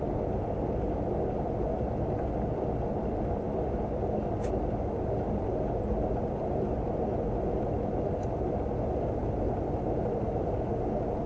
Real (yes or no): yes